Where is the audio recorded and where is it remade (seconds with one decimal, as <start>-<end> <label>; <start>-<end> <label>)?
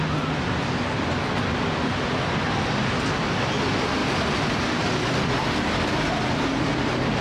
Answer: 0.0-7.2 recorded